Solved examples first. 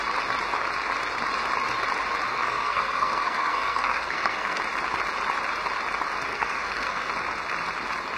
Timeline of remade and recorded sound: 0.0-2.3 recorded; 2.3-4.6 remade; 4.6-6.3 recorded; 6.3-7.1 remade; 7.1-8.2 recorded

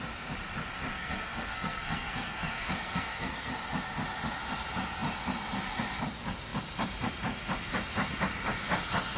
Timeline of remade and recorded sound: 0.0-0.9 recorded; 0.9-3.5 remade; 3.5-9.2 recorded

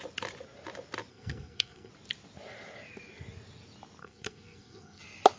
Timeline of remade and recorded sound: 0.0-1.1 recorded; 1.1-1.9 remade; 1.9-4.0 recorded; 4.0-5.0 remade; 5.0-5.4 recorded

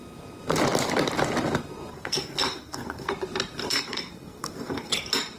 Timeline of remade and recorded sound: 0.0-1.9 recorded; 1.9-3.1 remade; 3.1-3.7 recorded; 3.7-4.9 remade; 4.9-5.4 recorded

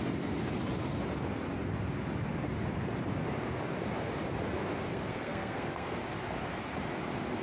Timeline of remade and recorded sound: 0.0-4.9 recorded; 4.9-6.2 remade; 6.2-7.4 recorded

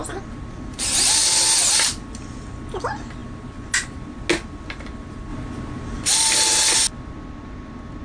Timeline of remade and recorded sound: 0.0-8.0 recorded

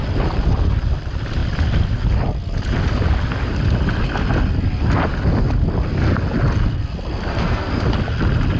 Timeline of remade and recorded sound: 0.0-7.3 recorded; 7.3-7.8 remade; 7.8-8.6 recorded

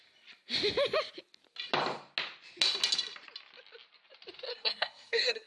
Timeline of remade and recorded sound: 0.0-4.5 recorded; 4.5-5.5 remade